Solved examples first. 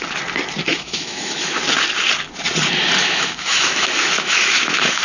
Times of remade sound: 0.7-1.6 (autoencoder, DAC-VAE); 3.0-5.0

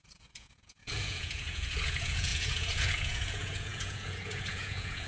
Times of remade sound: 0.0-5.1 (vocoder, Vocos)

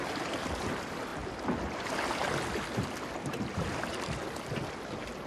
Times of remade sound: none